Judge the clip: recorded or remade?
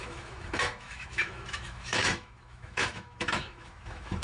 remade